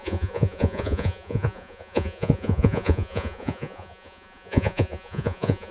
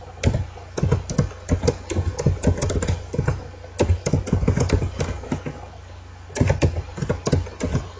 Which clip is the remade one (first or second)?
first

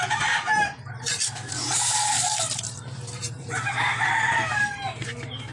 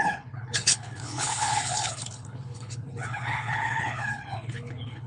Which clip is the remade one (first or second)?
second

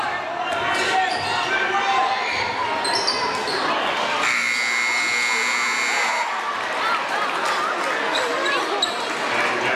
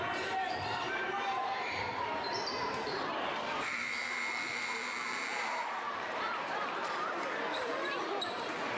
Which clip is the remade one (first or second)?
second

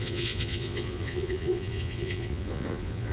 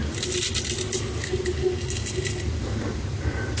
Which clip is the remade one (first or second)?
first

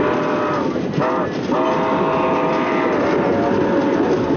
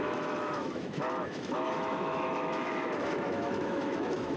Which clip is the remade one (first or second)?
second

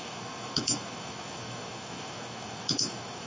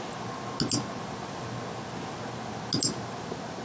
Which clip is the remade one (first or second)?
first